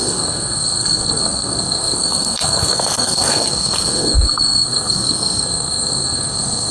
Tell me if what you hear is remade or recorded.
remade